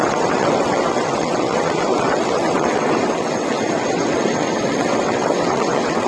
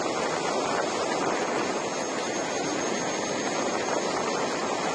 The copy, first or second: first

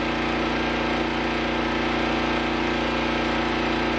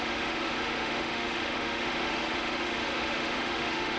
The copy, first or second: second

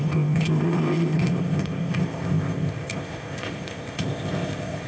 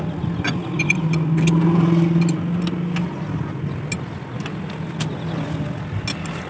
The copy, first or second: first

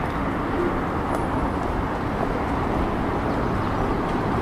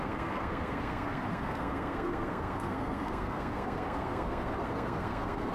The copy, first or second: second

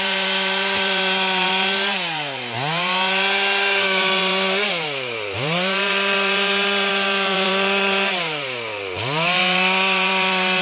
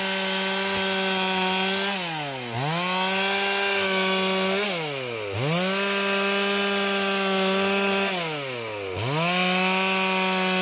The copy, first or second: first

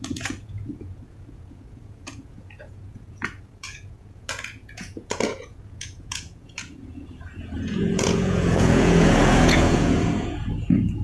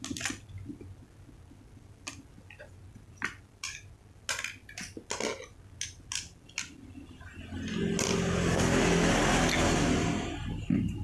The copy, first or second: first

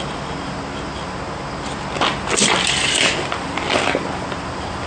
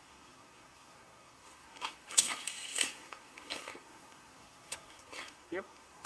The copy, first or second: second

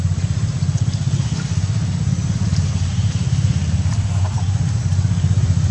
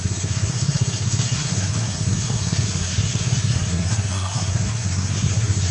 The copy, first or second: second